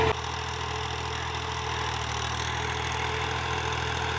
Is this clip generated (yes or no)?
no